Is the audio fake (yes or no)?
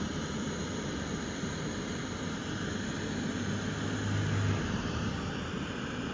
no